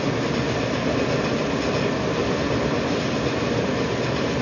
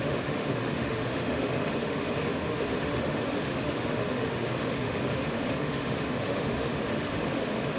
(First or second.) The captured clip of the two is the first